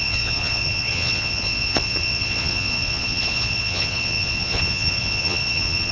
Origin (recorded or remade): remade